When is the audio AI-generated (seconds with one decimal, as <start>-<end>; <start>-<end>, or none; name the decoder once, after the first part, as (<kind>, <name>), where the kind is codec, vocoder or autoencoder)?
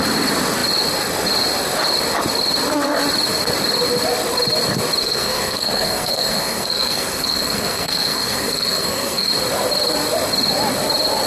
5.0-9.3 (codec, SNAC)